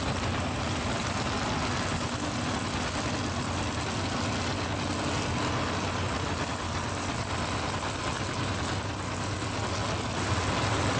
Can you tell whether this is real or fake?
real